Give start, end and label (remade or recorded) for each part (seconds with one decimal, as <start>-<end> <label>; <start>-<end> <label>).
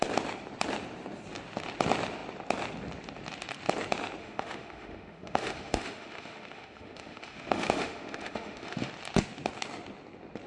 0.0-4.2 recorded; 4.2-8.9 remade; 8.9-10.5 recorded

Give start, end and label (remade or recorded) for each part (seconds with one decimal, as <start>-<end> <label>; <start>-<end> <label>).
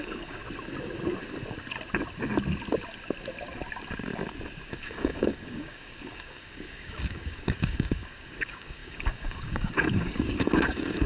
0.0-0.4 remade; 0.4-4.7 recorded; 4.7-11.1 remade